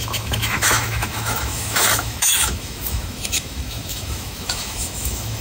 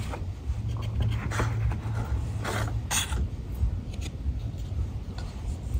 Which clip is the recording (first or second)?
second